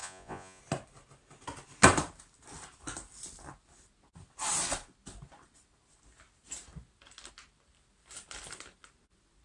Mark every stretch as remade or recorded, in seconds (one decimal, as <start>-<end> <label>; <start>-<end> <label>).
0.0-0.6 remade; 0.6-9.4 recorded